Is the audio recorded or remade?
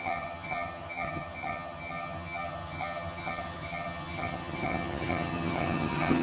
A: remade